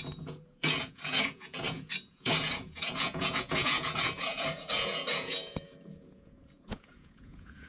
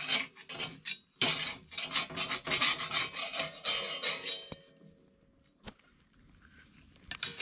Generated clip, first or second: first